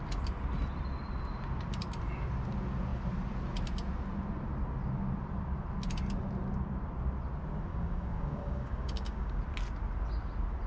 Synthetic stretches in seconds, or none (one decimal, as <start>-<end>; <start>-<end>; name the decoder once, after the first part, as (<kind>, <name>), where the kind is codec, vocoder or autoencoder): 7.7-9.4 (codec, DAC)